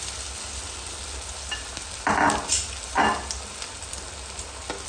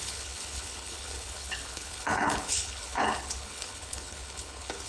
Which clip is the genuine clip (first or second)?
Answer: first